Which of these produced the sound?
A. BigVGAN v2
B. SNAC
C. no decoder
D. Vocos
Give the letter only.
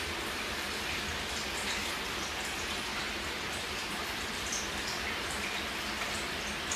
A